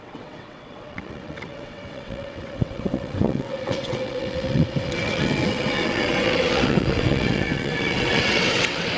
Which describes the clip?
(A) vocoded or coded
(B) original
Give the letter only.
A